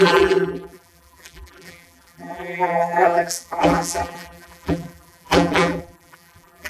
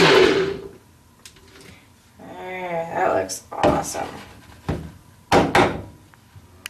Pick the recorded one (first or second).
second